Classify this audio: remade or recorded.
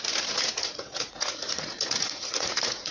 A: remade